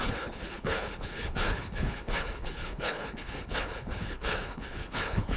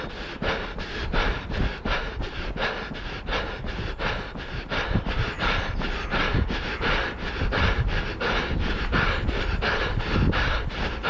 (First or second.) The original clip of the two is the second